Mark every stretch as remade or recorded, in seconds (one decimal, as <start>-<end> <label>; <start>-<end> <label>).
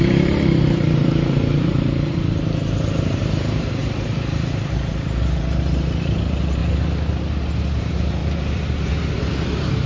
0.0-6.6 remade; 6.6-7.8 recorded; 7.8-8.2 remade; 8.2-9.4 recorded; 9.4-9.9 remade